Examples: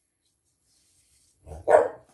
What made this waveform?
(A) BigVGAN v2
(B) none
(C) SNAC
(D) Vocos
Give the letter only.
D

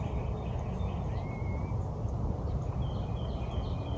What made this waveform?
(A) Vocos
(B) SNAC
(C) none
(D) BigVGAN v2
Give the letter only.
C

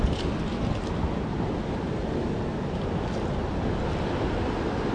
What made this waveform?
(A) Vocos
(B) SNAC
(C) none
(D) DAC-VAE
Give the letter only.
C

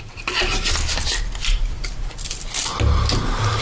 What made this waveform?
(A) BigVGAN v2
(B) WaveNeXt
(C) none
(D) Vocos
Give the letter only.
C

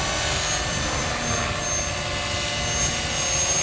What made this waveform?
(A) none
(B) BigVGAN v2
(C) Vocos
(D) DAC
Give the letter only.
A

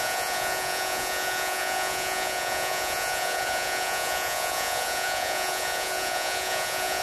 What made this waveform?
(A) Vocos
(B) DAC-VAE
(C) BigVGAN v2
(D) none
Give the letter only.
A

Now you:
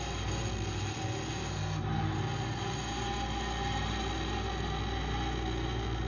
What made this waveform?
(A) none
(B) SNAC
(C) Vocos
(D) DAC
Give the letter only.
A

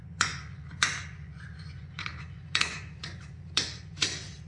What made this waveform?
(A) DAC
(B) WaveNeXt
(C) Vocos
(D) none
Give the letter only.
C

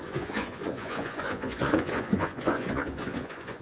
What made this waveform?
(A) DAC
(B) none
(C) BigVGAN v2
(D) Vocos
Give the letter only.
D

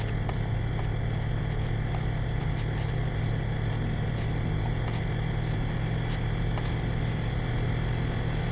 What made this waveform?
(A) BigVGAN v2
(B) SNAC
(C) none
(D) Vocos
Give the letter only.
C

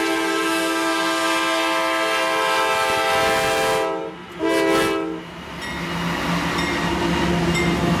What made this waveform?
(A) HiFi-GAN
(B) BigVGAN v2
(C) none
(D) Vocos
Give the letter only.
C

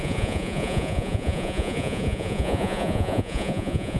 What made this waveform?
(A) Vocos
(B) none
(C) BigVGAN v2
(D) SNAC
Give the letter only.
A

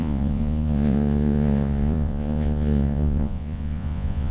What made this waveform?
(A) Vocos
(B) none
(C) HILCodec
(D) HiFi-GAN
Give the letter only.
A